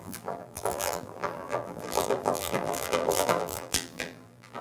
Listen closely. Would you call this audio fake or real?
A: fake